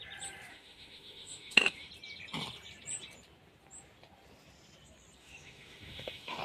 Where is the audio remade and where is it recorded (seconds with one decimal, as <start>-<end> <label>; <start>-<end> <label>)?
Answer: 0.0-0.5 recorded; 0.5-1.9 remade; 1.9-5.2 recorded; 5.2-6.4 remade